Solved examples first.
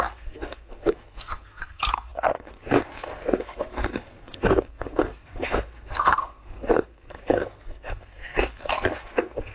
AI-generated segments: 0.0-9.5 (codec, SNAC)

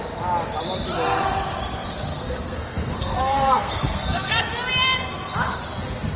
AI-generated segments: 2.1-4.4 (codec, SNAC)

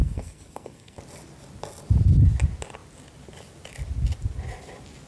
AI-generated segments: 0.0-1.0 (codec, SNAC)

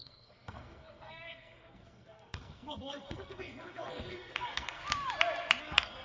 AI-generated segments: 0.0-4.8 (codec, SNAC); 5.6-6.0